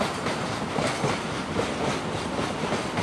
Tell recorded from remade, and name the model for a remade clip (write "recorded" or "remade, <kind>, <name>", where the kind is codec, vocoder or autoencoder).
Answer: recorded